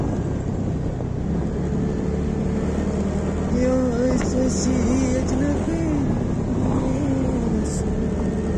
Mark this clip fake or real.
real